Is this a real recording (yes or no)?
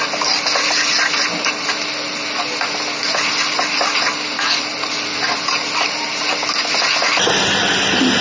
yes